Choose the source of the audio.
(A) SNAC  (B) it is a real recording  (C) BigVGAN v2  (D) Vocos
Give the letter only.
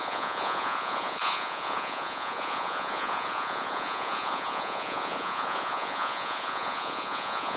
D